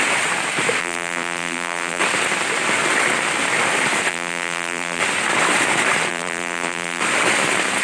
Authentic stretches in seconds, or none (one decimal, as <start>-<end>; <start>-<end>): 0.0-0.8; 2.0-4.1; 5.0-6.1; 7.0-7.8